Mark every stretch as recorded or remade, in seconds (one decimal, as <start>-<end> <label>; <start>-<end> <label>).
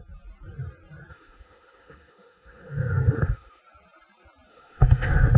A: 0.0-1.1 recorded; 1.1-3.6 remade; 3.6-4.5 recorded; 4.5-5.4 remade